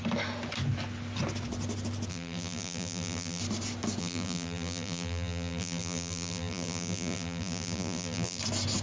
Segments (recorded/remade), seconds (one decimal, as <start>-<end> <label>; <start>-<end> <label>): 0.0-2.1 recorded; 2.1-3.4 remade; 3.4-4.0 recorded; 4.0-8.4 remade; 8.4-8.8 recorded